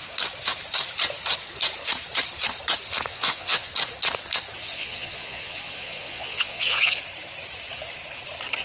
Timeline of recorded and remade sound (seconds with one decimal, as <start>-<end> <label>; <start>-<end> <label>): 0.0-3.1 recorded; 3.1-3.7 remade; 3.7-4.6 recorded; 4.6-7.0 remade; 7.0-8.6 recorded